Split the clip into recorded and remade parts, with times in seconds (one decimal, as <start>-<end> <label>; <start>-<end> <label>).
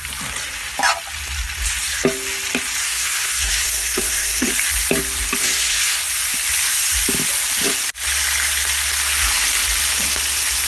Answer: 0.0-2.8 recorded; 2.8-4.5 remade; 4.5-5.4 recorded; 5.4-6.0 remade; 6.0-10.7 recorded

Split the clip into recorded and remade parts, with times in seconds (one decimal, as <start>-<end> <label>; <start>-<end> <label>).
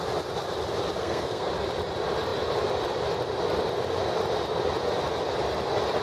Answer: 0.0-1.0 recorded; 1.0-1.5 remade; 1.5-6.0 recorded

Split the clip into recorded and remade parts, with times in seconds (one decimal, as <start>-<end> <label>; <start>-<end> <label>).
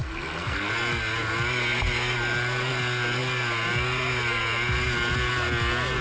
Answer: 0.0-0.7 remade; 0.7-6.0 recorded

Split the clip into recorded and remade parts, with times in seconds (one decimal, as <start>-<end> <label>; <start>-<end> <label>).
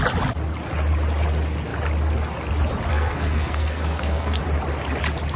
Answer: 0.0-2.9 recorded; 2.9-4.4 remade; 4.4-5.4 recorded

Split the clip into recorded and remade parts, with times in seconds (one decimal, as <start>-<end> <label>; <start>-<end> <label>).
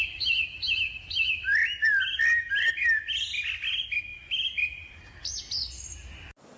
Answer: 0.0-6.6 recorded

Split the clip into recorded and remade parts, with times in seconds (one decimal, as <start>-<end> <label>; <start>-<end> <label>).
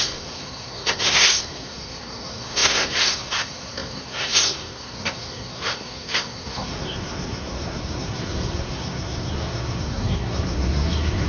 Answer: 0.0-11.3 remade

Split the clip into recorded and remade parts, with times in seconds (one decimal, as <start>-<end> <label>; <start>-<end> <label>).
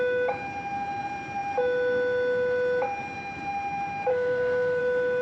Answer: 0.0-4.1 recorded; 4.1-4.8 remade; 4.8-5.2 recorded